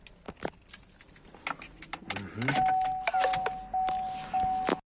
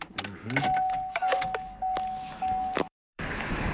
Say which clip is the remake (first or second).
second